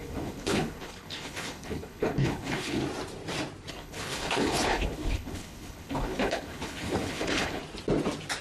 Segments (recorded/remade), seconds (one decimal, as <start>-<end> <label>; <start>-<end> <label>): 0.0-2.8 remade; 2.8-3.7 recorded; 3.7-7.6 remade; 7.6-8.4 recorded